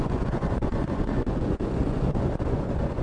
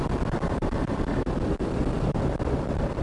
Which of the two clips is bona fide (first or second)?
second